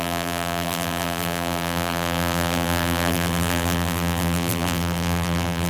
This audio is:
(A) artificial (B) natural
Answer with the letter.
A